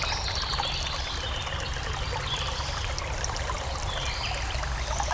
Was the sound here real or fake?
real